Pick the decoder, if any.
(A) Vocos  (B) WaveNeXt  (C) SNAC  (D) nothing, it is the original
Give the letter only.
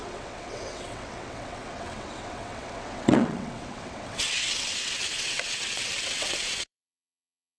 B